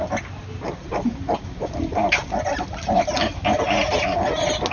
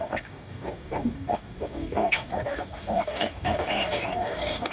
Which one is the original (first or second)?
first